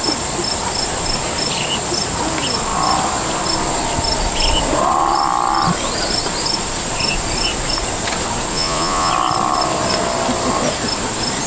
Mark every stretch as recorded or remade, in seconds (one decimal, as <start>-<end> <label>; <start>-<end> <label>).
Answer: 0.0-8.5 recorded; 8.5-9.1 remade; 9.1-11.5 recorded